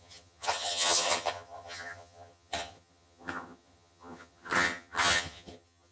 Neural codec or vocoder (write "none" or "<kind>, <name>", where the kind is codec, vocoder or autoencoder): vocoder, HiFi-GAN